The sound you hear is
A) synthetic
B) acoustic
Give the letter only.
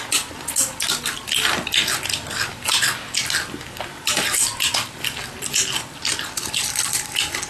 B